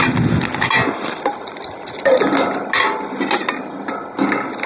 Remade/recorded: recorded